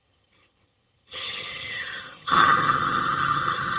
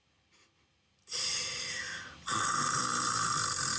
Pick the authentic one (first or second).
second